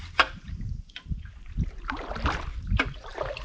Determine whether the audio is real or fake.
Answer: fake